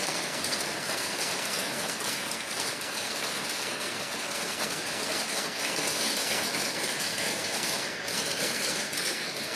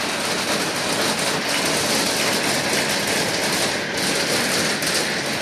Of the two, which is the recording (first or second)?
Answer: second